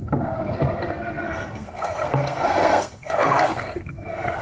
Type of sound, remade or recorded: remade